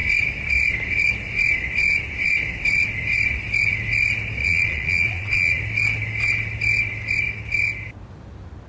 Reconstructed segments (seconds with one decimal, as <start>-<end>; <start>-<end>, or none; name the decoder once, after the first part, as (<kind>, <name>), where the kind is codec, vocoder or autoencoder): 4.4-5.6 (vocoder, Vocos)